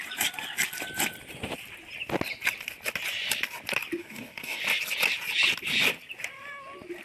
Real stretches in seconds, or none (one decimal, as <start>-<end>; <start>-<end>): 0.0-4.0; 4.6-7.0

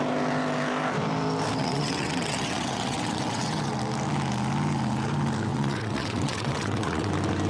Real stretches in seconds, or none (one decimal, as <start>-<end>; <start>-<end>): 0.0-1.6; 3.7-5.5; 7.1-7.5

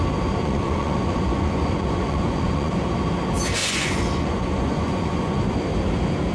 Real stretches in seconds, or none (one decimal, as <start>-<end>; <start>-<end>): 0.0-0.4; 2.8-3.6; 5.5-6.3

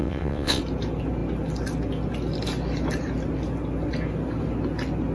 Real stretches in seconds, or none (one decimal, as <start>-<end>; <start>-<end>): 0.6-5.1

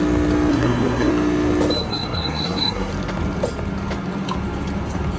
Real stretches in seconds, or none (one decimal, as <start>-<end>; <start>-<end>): 0.0-0.5; 1.1-1.9; 2.9-5.2

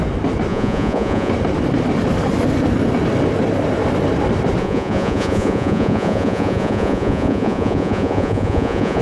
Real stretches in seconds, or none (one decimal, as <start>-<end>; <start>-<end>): 0.0-0.5; 1.3-4.6

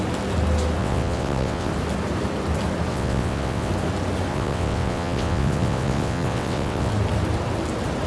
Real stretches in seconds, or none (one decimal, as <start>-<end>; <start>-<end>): 0.0-0.8; 1.7-2.9; 3.7-4.3; 6.9-8.1